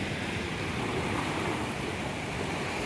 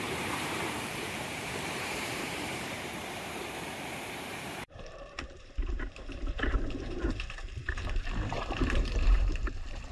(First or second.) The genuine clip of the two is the first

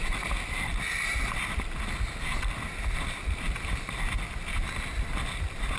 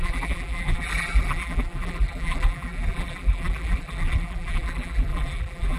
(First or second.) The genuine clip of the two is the first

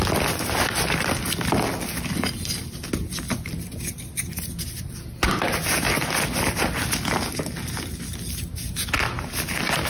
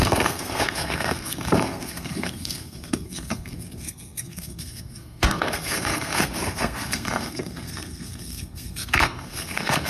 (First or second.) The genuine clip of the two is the first